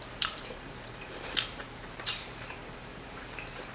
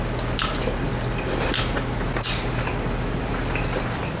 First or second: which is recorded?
second